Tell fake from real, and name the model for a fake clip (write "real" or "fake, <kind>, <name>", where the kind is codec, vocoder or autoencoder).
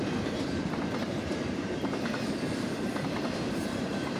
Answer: fake, vocoder, BigVGAN v2